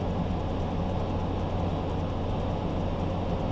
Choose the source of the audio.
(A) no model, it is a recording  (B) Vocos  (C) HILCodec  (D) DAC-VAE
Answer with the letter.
A